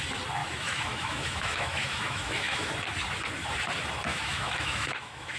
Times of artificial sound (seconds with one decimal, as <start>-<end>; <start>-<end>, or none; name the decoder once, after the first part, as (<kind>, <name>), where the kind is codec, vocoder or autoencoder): 0.4-2.7 (autoencoder, DAC-VAE); 4.1-5.4